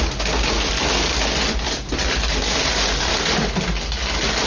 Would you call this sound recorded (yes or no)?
yes